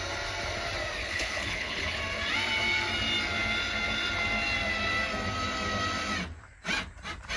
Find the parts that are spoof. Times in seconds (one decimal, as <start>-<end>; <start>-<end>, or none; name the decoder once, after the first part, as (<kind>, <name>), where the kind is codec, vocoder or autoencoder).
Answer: 1.0-2.0 (codec, HILCodec)